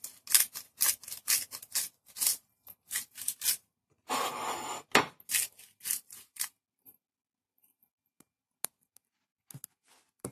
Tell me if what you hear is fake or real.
real